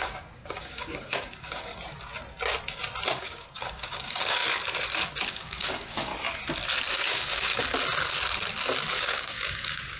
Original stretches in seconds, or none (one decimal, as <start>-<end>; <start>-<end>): 1.7-3.2; 4.4-5.3; 6.1-6.9; 7.5-8.9